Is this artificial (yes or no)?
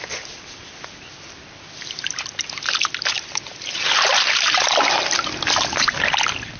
no